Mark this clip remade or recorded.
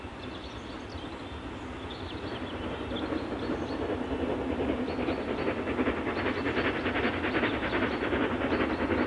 recorded